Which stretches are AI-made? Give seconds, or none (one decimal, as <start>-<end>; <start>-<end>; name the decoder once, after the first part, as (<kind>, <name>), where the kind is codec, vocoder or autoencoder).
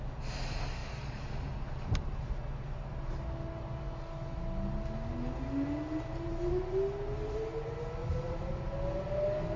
8.0-8.5 (vocoder, BigVGAN v2)